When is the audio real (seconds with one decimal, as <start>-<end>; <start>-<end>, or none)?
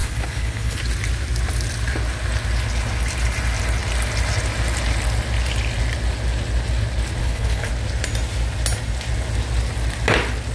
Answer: 0.8-7.2; 7.7-10.5